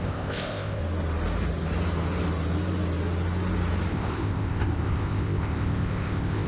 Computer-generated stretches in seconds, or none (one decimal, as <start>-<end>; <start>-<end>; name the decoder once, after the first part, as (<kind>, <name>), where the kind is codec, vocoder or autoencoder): 0.0-0.8 (codec, ZipCodec); 3.9-6.5